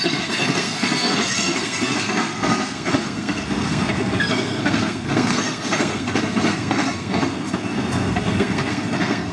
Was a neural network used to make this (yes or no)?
yes